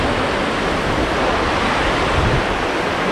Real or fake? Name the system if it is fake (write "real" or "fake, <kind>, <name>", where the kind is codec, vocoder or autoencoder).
real